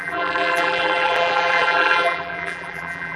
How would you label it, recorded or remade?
remade